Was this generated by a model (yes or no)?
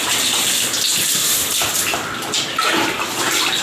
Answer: no